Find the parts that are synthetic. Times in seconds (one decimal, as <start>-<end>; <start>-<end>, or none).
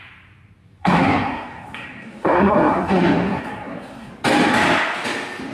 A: 0.8-4.1